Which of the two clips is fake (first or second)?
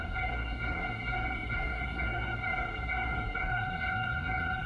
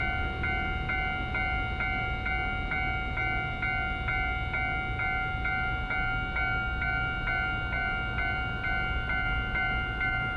first